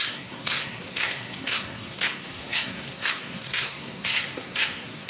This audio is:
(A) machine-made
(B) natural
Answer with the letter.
A